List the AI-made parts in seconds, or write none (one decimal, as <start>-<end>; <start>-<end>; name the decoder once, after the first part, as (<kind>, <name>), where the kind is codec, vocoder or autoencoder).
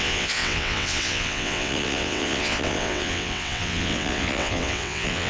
0.0-5.3 (vocoder, WaveNeXt)